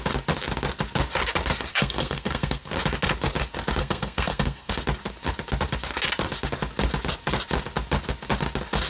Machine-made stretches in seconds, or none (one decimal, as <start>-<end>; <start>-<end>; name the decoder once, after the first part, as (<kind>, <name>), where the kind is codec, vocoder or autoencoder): 1.7-2.7 (codec, SNAC); 3.8-4.7